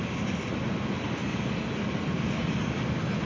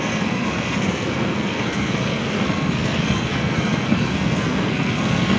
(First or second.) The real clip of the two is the first